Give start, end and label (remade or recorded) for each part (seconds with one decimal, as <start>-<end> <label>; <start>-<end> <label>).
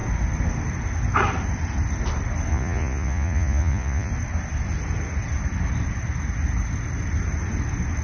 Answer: 0.0-2.5 recorded; 2.5-4.1 remade; 4.1-8.0 recorded